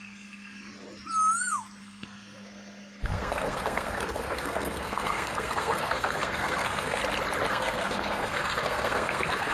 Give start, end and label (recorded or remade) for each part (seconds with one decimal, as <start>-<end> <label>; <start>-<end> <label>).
0.0-0.7 remade; 0.7-1.8 recorded; 1.8-7.0 remade; 7.0-7.5 recorded; 7.5-9.5 remade